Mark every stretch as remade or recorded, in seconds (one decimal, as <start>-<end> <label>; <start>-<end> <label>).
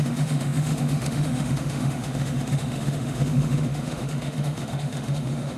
0.0-5.6 remade